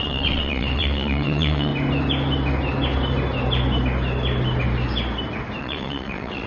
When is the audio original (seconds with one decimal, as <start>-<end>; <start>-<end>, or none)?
1.7-5.6